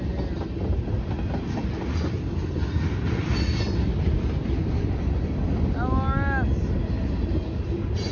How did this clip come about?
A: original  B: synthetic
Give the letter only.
A